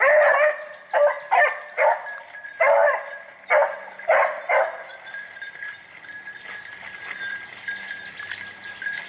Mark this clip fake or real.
real